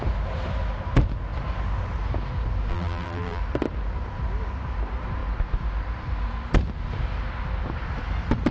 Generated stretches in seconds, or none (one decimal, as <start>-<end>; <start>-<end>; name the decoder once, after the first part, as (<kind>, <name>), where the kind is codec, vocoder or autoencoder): 2.7-3.4 (vocoder, BigVGAN v2)